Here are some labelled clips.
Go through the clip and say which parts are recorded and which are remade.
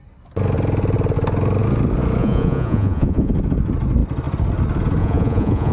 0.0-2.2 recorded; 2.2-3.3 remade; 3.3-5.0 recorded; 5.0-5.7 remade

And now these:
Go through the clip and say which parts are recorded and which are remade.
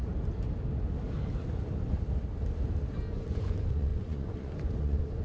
0.0-3.1 recorded; 3.1-5.2 remade